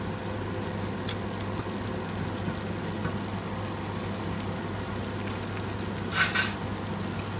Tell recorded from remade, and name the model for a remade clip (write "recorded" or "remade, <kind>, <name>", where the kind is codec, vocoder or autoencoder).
recorded